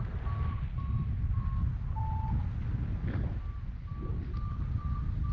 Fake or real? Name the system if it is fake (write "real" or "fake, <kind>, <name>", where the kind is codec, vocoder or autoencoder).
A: real